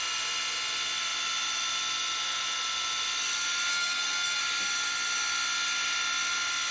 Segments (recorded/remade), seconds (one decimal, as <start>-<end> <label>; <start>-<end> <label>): 0.0-3.7 recorded; 3.7-4.4 remade; 4.4-6.7 recorded